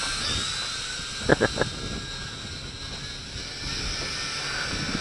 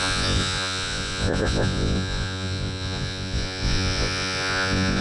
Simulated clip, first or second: second